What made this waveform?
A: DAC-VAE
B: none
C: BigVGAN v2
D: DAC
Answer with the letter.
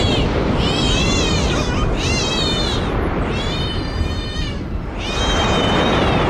B